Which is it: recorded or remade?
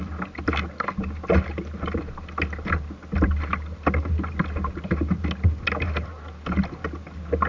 recorded